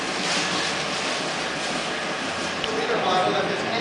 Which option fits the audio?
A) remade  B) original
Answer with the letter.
B